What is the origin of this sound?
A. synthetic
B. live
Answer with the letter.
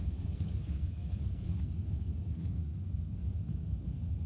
A